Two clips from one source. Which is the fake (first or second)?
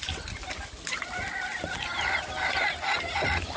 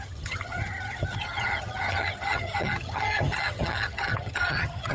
second